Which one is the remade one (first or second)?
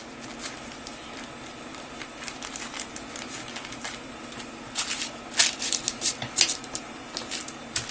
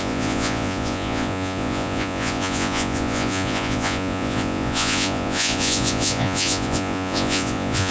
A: second